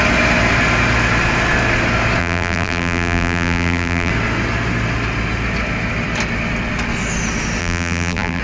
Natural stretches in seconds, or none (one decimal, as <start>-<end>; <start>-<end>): 0.0-2.2; 4.1-7.6